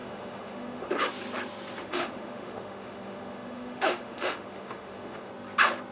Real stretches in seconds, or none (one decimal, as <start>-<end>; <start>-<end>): 0.9-1.8; 5.3-5.9